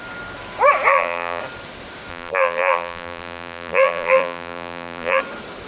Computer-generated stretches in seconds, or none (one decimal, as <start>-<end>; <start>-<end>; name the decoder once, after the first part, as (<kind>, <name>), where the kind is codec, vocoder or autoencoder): 0.9-1.4 (vocoder, BigVGAN v2); 2.1-5.2